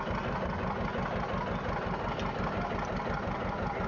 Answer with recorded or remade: recorded